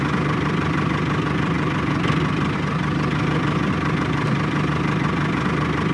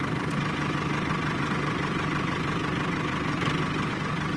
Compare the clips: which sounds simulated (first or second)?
second